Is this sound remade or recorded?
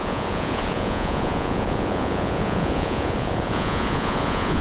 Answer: remade